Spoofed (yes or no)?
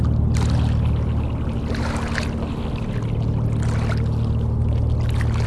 no